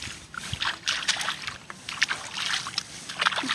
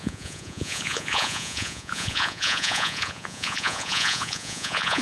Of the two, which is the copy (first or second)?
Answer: second